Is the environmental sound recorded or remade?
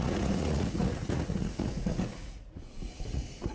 remade